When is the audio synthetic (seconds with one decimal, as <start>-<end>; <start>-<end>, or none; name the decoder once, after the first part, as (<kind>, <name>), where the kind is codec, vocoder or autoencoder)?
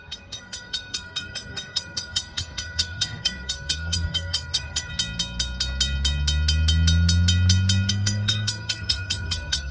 0.0-4.9 (codec, SNAC); 7.9-9.7